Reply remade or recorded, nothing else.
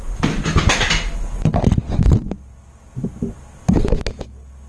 recorded